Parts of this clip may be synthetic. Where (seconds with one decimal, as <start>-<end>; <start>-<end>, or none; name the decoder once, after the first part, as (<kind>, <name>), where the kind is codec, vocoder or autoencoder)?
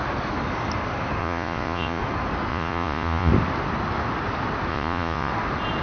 1.2-2.0 (vocoder, Vocos); 2.5-3.3; 4.7-5.3